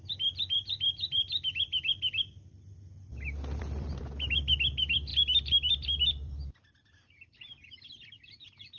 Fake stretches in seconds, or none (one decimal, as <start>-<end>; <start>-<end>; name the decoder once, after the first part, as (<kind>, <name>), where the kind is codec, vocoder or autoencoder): 3.1-4.0 (vocoder, BigVGAN v2); 5.1-6.9